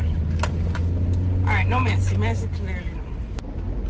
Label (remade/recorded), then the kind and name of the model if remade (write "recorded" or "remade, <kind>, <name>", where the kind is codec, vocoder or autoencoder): recorded